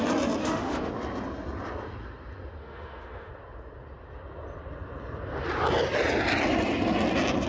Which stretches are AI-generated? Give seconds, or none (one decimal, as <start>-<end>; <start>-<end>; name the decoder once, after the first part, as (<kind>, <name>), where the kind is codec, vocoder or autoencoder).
0.4-0.9 (autoencoder, DAC-VAE); 2.6-3.3